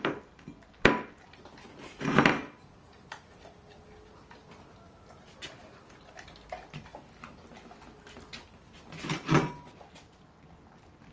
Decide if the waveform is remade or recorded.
recorded